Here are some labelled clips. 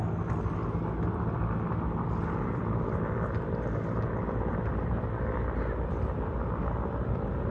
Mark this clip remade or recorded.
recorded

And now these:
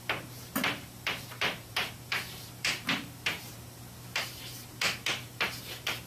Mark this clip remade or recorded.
remade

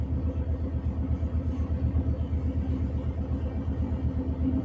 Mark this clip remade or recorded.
recorded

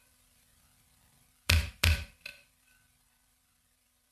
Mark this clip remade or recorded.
remade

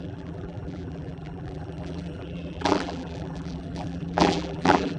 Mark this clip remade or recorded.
remade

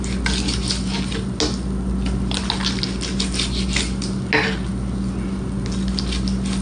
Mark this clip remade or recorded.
recorded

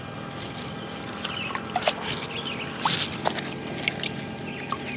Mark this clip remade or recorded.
recorded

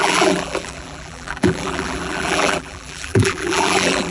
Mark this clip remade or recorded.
remade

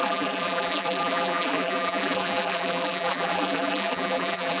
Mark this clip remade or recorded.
remade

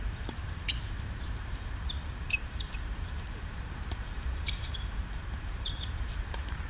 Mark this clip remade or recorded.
remade